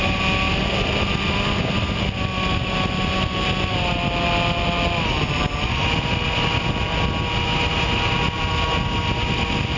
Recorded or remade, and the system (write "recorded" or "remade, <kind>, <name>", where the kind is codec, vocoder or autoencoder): recorded